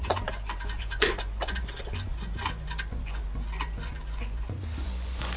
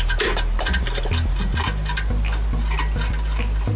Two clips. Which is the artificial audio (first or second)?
first